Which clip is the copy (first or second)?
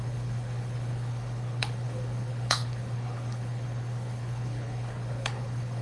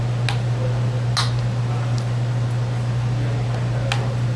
first